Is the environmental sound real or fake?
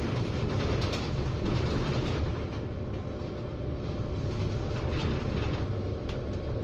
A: real